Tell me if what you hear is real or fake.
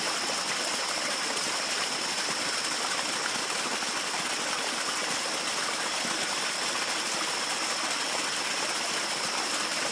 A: real